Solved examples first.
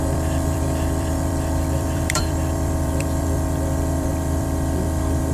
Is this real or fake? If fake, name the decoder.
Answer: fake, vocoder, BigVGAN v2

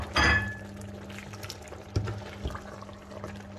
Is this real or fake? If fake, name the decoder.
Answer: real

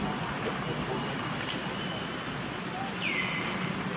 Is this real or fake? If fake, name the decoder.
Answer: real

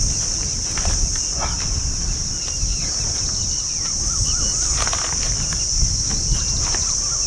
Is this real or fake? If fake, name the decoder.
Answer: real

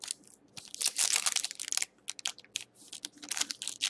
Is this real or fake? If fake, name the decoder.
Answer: real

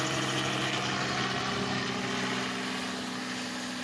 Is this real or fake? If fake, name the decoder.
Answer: real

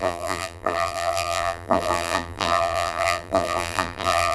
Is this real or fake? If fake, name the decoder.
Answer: fake, vocoder, BigVGAN v2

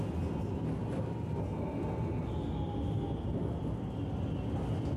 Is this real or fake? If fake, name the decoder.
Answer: real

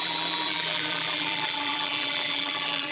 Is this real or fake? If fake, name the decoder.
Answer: fake, vocoder, BigVGAN v2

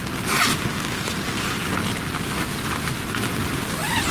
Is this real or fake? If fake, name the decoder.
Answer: real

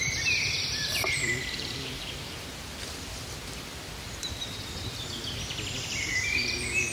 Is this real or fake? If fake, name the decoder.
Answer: fake, vocoder, BigVGAN v2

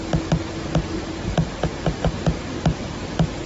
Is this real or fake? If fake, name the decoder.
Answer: real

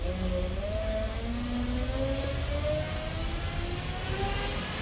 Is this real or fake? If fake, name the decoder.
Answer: real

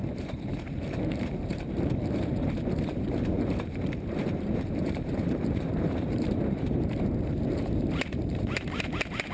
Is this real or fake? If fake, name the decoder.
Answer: fake, vocoder, BigVGAN v2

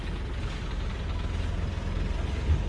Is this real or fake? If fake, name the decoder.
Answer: real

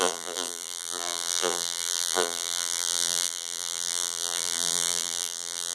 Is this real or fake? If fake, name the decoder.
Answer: fake, vocoder, BigVGAN v2